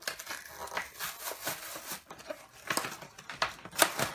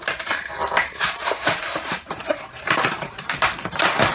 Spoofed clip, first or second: second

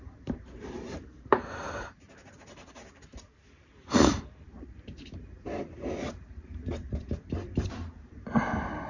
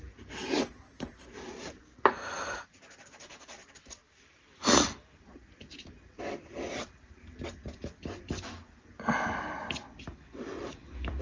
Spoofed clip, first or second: first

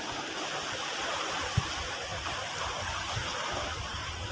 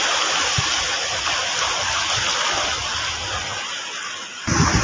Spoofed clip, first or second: first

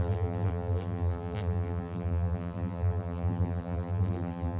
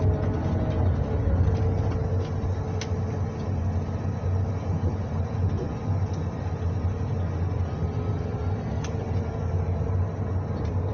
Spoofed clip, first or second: first